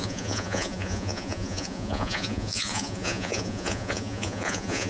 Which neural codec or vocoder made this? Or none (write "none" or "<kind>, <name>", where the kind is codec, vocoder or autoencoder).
vocoder, Vocos